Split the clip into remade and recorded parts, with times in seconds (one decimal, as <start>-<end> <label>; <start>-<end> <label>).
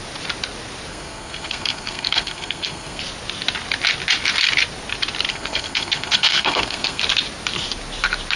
0.0-0.9 recorded; 0.9-3.0 remade; 3.0-5.3 recorded; 5.3-7.0 remade; 7.0-8.4 recorded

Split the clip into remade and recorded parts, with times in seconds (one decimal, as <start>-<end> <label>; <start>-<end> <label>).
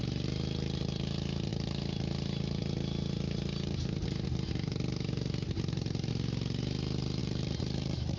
0.0-7.2 recorded; 7.2-8.2 remade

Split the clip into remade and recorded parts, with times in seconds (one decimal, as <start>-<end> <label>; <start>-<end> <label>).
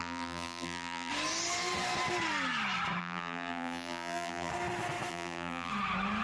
0.0-1.1 remade; 1.1-3.0 recorded; 3.0-4.5 remade; 4.5-5.1 recorded; 5.1-5.7 remade; 5.7-6.2 recorded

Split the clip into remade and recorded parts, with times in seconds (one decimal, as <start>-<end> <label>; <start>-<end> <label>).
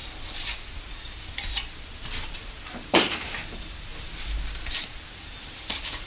0.0-2.3 recorded; 2.3-3.9 remade; 3.9-4.7 recorded; 4.7-6.1 remade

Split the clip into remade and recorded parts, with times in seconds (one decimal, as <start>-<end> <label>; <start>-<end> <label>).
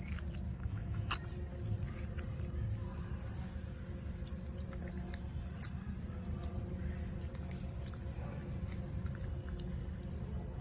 0.0-0.5 recorded; 0.5-1.1 remade; 1.1-10.6 recorded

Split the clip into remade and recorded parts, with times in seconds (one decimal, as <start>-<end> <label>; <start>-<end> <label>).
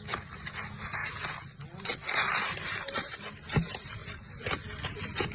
0.0-5.3 recorded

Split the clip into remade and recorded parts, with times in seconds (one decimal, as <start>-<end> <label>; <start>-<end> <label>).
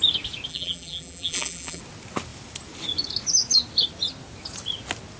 0.0-0.5 recorded; 0.5-1.8 remade; 1.8-5.2 recorded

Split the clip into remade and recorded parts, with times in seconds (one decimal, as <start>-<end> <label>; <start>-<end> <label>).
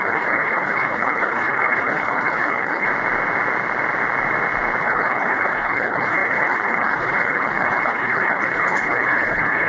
0.0-2.9 remade; 2.9-4.8 recorded; 4.8-9.7 remade